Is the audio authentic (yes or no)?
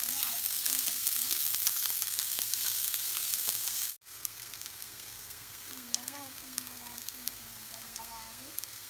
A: no